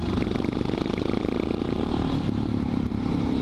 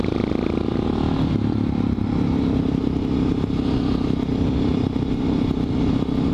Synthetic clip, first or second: first